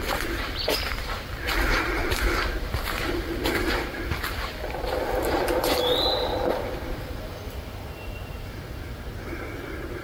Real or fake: real